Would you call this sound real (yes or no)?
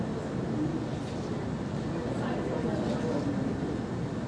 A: yes